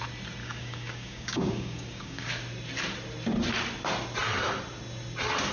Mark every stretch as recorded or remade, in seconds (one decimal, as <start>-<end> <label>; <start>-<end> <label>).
0.0-0.4 recorded; 0.4-2.3 remade; 2.3-5.5 recorded